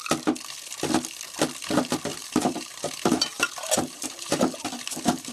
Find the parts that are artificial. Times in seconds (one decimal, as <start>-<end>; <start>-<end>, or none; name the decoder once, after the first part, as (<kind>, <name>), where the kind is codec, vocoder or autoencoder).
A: 2.1-5.3 (vocoder, BigVGAN v2)